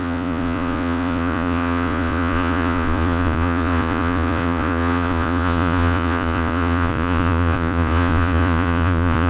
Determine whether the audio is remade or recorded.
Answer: remade